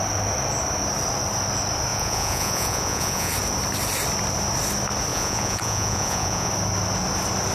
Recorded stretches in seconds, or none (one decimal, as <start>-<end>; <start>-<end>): 0.0-1.9; 3.3-5.1; 6.5-7.5